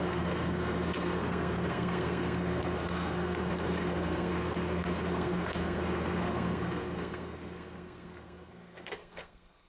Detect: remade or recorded remade